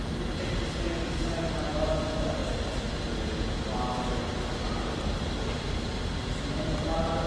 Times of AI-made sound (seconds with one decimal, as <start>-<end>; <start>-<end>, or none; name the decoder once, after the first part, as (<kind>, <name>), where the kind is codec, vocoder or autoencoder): none